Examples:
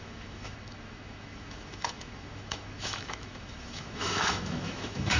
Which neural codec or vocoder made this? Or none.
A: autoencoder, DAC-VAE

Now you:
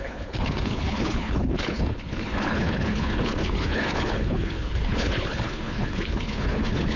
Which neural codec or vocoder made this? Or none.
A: codec, HILCodec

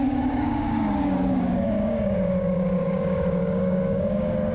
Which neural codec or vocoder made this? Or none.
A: codec, DAC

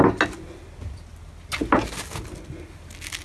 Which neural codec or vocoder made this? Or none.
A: none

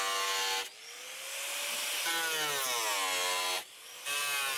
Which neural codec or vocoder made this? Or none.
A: none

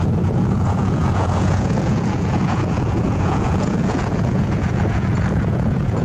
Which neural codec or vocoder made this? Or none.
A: vocoder, Vocos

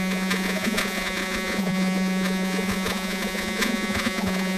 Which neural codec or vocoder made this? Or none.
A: vocoder, Vocos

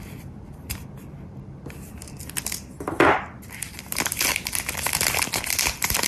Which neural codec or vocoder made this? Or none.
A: none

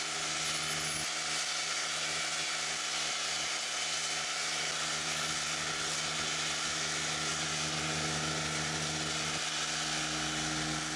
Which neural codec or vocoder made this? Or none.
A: none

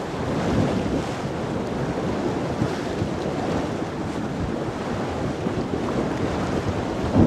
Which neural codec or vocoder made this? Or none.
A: none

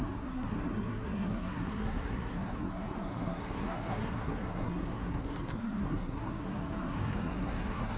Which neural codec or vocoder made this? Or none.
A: codec, SNAC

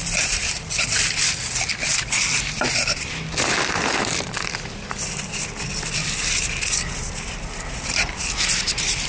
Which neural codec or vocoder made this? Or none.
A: vocoder, BigVGAN v2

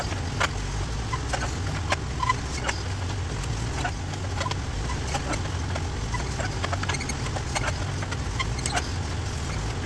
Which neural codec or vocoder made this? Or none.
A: none